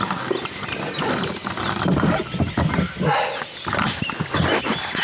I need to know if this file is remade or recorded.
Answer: recorded